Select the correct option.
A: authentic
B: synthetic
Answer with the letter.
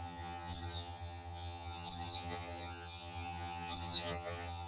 B